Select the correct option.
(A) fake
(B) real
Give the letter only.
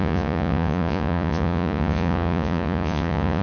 A